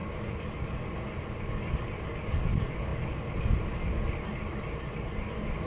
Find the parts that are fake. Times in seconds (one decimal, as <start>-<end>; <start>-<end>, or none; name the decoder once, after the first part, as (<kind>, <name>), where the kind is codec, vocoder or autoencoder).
none